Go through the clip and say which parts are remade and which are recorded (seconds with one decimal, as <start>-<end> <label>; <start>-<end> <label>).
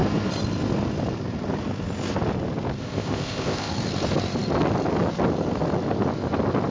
0.0-2.8 recorded; 2.8-3.7 remade; 3.7-6.7 recorded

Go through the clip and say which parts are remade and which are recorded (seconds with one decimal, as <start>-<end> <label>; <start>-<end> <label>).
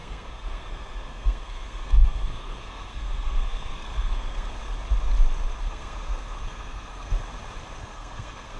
0.0-4.6 remade; 4.6-5.6 recorded; 5.6-7.1 remade; 7.1-7.8 recorded; 7.8-8.6 remade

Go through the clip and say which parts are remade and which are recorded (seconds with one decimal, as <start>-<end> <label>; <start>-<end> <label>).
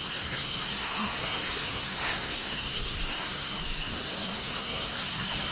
0.0-5.5 remade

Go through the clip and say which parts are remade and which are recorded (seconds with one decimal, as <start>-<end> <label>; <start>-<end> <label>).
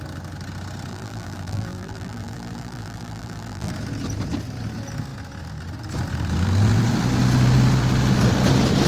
0.0-0.9 recorded; 0.9-3.7 remade; 3.7-8.9 recorded